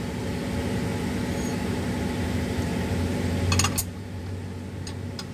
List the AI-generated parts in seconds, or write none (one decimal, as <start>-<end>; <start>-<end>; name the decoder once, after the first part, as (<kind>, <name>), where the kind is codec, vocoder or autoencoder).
none